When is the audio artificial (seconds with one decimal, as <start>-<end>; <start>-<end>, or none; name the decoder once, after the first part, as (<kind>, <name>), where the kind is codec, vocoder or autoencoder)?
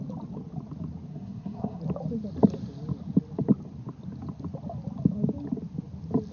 1.1-1.8 (codec, SNAC)